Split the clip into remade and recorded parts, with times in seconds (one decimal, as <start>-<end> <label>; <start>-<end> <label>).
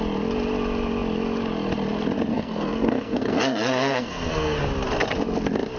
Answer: 0.0-2.3 recorded; 2.3-4.6 remade; 4.6-5.8 recorded